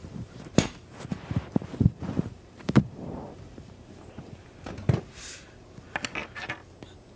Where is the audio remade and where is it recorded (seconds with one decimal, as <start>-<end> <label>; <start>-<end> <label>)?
0.0-4.3 remade; 4.3-7.2 recorded